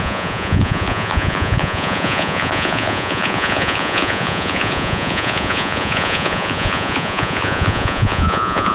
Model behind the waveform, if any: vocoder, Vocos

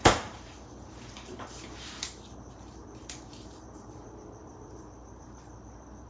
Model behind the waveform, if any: vocoder, BigVGAN v2